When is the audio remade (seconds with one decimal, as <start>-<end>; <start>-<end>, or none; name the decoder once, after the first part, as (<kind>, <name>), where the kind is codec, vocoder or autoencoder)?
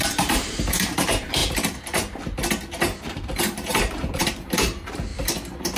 0.0-1.4 (vocoder, BigVGAN v2); 3.0-5.1